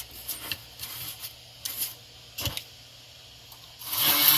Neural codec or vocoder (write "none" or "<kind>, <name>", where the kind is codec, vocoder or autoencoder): none